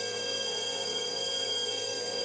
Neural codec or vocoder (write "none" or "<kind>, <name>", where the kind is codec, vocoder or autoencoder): codec, SNAC